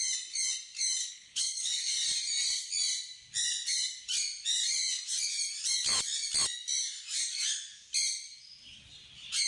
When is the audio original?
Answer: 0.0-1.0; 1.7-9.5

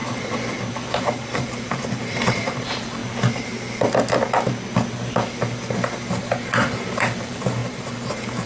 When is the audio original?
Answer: 0.0-1.0; 3.0-6.1